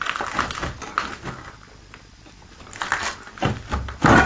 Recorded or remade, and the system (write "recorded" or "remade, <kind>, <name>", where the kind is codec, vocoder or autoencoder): recorded